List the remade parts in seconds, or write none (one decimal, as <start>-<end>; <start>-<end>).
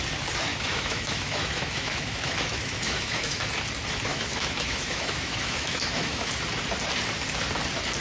0.5-3.4; 4.1-6.3